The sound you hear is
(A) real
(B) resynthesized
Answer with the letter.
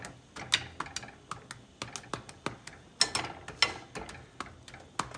A